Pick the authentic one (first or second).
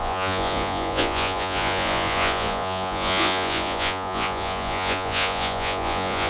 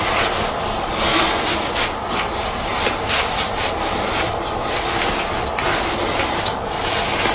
second